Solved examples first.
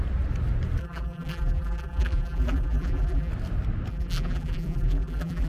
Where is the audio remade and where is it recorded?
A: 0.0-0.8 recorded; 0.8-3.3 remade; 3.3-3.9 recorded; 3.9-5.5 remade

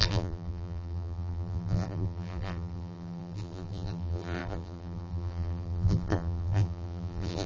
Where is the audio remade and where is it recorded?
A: 0.0-7.5 remade

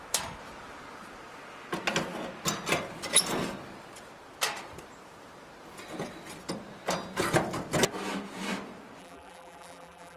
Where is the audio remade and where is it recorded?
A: 0.0-9.0 recorded; 9.0-10.2 remade